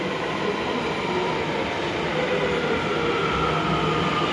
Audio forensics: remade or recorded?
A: recorded